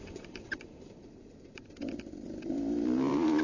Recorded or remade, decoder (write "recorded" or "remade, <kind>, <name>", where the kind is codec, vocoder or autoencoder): remade, vocoder, BigVGAN v2